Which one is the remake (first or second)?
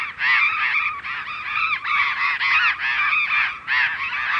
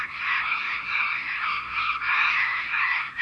second